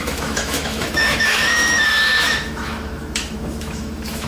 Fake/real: fake